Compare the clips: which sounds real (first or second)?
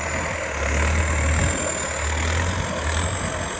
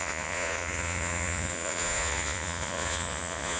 first